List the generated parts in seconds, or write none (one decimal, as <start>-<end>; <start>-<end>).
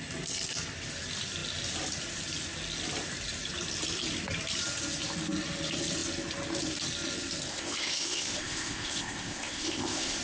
7.5-10.2